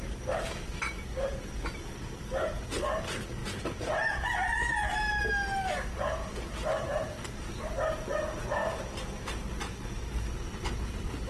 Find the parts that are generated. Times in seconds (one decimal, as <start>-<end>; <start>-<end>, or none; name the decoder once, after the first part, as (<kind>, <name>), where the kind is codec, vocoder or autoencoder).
3.4-4.9 (vocoder, BigVGAN v2); 5.7-7.8; 8.6-9.3